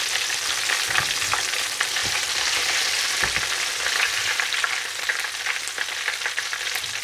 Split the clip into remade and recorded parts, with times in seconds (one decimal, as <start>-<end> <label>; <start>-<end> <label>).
0.0-2.0 recorded; 2.0-3.3 remade; 3.3-7.0 recorded

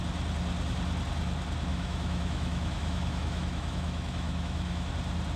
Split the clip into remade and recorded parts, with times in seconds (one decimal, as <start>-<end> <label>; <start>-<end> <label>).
0.0-1.7 recorded; 1.7-4.9 remade; 4.9-5.4 recorded

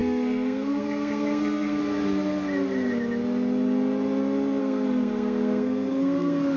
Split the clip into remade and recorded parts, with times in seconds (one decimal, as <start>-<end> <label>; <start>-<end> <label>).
0.0-1.8 remade; 1.8-4.6 recorded; 4.6-6.6 remade

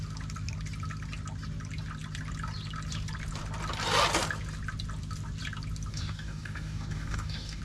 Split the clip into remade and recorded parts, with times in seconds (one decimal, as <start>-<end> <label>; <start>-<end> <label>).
0.0-5.9 recorded; 5.9-7.6 remade

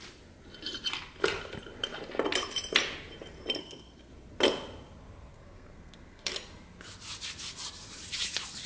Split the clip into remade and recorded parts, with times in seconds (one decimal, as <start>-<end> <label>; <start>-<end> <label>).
0.0-3.6 recorded; 3.6-4.1 remade; 4.1-5.3 recorded; 5.3-6.3 remade; 6.3-8.7 recorded

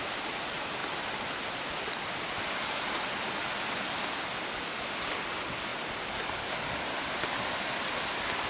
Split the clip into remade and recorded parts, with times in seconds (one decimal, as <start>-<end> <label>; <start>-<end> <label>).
0.0-8.5 recorded

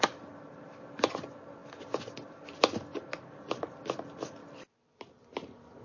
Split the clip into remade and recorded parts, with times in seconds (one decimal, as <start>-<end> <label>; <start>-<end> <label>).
0.0-5.8 recorded

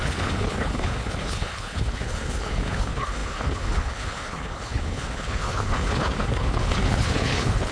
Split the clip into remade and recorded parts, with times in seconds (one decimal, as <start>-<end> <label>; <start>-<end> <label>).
0.0-7.7 remade